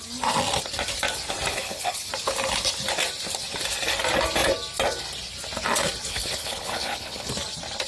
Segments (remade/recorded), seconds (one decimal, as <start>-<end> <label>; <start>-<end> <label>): 0.0-1.5 recorded; 1.5-2.1 remade; 2.1-6.1 recorded; 6.1-7.3 remade; 7.3-7.9 recorded